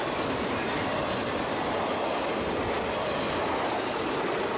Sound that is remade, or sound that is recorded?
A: recorded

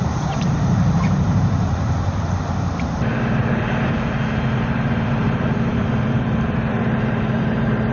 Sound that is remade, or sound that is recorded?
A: remade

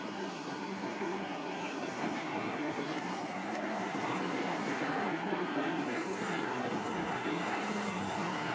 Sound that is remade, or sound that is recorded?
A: remade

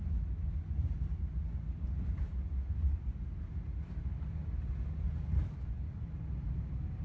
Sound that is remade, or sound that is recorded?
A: recorded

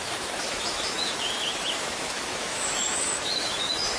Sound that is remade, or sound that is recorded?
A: remade